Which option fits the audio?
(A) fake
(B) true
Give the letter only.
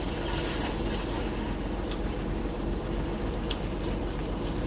B